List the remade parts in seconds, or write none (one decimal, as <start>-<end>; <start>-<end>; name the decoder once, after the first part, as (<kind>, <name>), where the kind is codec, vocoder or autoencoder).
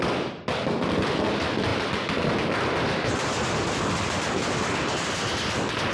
none